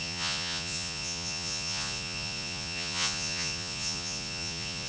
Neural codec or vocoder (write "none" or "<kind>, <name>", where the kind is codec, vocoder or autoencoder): vocoder, Vocos